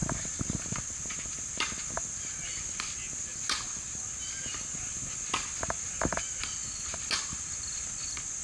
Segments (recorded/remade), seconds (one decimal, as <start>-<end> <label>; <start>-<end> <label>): 0.0-8.4 recorded